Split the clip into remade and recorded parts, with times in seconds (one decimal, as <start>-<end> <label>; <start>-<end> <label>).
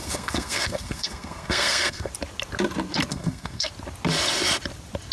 0.0-2.1 remade; 2.1-3.1 recorded; 3.1-3.7 remade; 3.7-5.1 recorded